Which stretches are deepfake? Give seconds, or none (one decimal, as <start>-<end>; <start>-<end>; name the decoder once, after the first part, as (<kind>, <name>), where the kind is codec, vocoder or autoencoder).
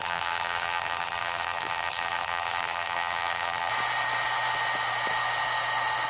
0.0-3.7 (vocoder, BigVGAN v2)